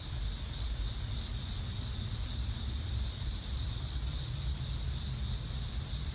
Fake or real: real